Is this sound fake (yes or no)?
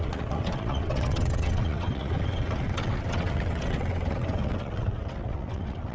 yes